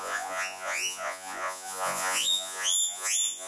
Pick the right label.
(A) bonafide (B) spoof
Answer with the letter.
B